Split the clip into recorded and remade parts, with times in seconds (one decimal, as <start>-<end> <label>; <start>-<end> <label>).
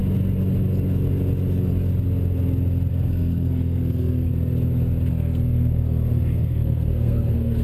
0.0-2.9 recorded; 2.9-4.3 remade; 4.3-5.1 recorded; 5.1-7.6 remade